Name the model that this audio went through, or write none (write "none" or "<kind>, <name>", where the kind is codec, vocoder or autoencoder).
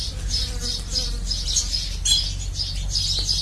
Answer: none